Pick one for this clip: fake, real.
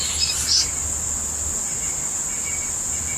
real